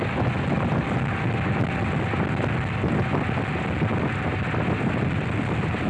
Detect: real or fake real